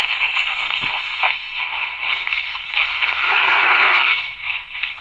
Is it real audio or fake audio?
fake